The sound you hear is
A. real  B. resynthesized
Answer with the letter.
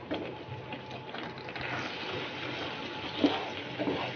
A